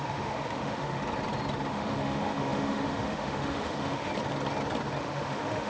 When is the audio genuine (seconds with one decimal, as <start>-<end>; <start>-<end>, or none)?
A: 1.0-1.7; 4.1-5.0